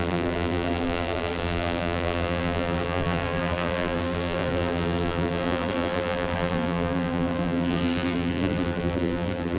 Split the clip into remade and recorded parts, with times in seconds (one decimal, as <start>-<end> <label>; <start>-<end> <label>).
0.0-9.6 remade